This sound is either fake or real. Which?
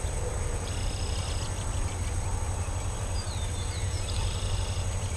fake